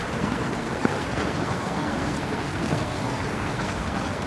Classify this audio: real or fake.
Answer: fake